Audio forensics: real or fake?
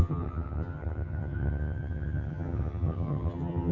fake